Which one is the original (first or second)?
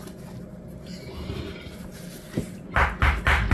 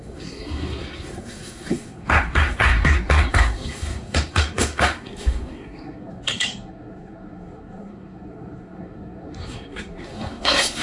first